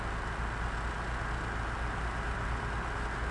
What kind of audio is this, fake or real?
real